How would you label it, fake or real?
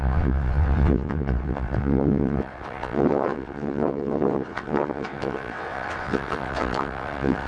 fake